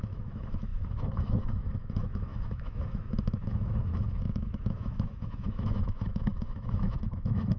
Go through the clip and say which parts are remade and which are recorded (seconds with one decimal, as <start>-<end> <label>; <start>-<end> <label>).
0.0-7.6 remade